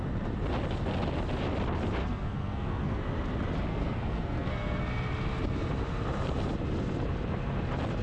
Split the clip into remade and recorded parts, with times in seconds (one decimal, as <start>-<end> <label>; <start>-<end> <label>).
0.0-2.0 recorded; 2.0-3.0 remade; 3.0-3.7 recorded; 3.7-4.8 remade; 4.8-8.0 recorded